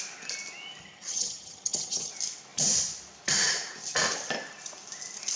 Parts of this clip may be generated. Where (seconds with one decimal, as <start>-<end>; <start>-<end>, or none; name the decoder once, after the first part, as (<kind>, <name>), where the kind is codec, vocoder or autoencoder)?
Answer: 0.8-2.1 (vocoder, HiFi-GAN)